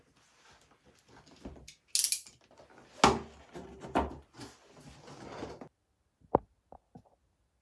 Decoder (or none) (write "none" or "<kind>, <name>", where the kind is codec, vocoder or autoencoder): none